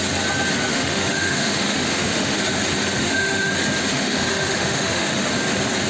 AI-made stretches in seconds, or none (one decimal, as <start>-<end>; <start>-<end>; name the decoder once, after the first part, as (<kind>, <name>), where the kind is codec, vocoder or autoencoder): 0.7-2.4 (autoencoder, DAC-VAE); 3.0-3.5; 3.9-5.3